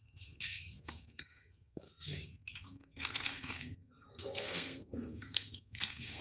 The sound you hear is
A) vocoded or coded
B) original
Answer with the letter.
A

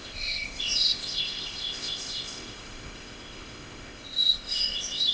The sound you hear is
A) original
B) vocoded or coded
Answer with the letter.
B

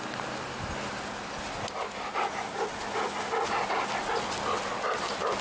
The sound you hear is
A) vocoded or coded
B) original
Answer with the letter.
B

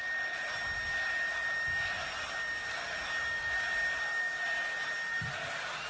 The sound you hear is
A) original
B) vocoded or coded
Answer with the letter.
A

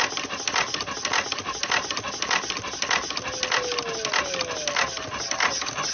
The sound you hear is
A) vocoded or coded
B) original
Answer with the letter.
B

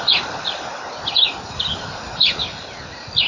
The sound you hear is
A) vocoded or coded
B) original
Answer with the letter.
A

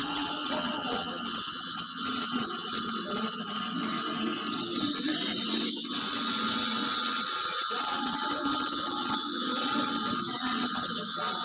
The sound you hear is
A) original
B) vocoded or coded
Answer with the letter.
B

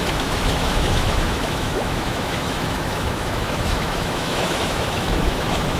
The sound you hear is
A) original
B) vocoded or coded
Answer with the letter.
B